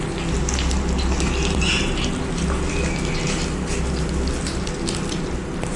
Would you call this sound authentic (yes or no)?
yes